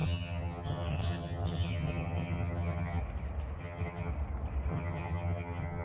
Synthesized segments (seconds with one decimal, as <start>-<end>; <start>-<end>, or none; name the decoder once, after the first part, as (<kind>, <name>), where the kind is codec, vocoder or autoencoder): 0.0-3.0 (vocoder, HiFi-GAN); 3.6-4.1; 4.7-5.8